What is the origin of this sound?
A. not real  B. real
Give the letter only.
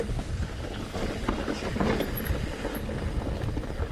B